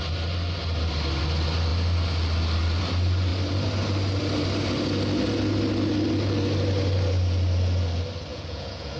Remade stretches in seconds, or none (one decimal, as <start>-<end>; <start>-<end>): 8.3-9.0